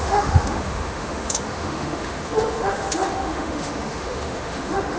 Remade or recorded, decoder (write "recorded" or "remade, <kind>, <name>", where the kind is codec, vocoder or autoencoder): remade, autoencoder, DAC-VAE